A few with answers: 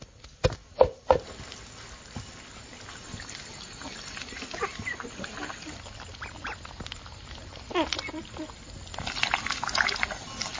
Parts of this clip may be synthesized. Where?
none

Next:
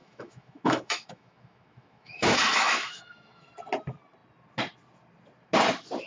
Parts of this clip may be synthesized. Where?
0.0-3.5 (autoencoder, DAC-VAE)

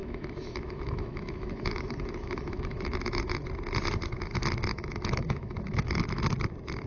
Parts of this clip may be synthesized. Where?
0.0-3.5 (autoencoder, DAC-VAE); 4.7-6.0

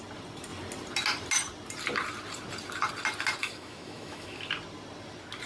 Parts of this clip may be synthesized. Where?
3.4-4.5 (autoencoder, DAC-VAE)

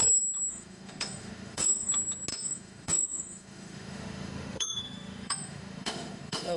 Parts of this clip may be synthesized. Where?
0.5-1.9 (autoencoder, DAC-VAE); 2.3-6.6

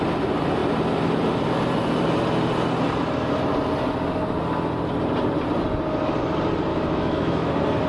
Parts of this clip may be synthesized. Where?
6.7-7.5 (autoencoder, DAC-VAE)